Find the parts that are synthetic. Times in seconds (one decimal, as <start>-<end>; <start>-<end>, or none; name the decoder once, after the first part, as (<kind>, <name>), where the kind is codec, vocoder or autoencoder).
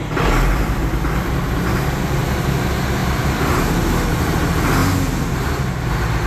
3.0-3.5 (vocoder, BigVGAN v2)